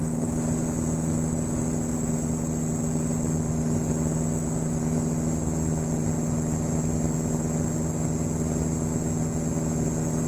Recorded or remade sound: recorded